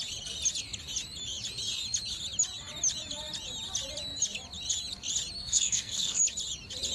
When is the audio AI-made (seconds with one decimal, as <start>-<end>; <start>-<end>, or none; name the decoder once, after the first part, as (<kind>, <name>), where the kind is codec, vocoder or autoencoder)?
5.4-6.2 (codec, SNAC)